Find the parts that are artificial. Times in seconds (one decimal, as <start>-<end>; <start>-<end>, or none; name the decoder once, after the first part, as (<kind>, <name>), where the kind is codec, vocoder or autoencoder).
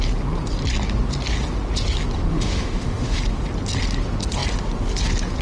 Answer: 2.3-3.2 (autoencoder, DAC-VAE)